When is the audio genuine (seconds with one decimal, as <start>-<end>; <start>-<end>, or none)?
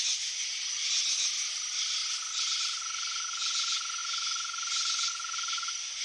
0.0-6.0